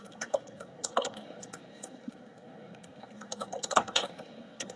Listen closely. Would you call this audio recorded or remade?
remade